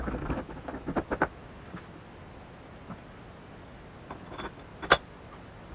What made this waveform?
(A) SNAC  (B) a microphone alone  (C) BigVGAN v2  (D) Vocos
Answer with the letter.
B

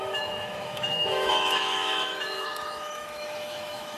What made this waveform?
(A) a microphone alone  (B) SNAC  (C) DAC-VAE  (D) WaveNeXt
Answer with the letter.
C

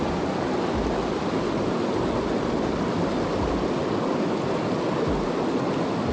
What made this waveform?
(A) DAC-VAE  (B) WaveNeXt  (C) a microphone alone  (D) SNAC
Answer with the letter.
C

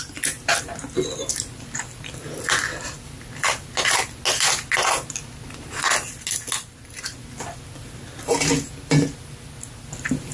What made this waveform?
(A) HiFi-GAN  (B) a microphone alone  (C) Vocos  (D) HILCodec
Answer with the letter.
B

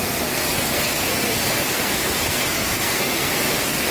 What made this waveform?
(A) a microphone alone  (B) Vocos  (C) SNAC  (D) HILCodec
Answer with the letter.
C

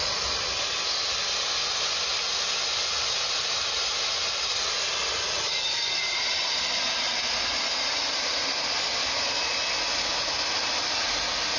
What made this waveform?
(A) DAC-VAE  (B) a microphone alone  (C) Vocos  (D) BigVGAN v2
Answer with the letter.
B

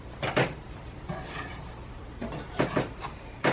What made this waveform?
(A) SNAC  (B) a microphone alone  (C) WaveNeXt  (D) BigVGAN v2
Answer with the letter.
D